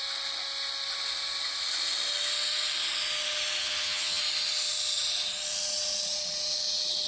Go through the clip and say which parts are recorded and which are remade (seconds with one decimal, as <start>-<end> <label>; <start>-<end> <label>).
0.0-3.6 recorded; 3.6-4.2 remade; 4.2-7.1 recorded